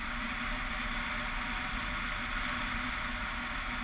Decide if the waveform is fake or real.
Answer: real